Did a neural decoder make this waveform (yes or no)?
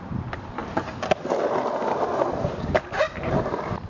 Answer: no